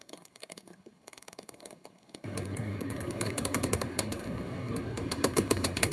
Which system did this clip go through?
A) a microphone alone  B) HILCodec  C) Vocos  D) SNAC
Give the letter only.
D